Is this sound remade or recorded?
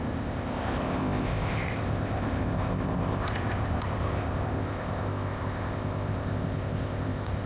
remade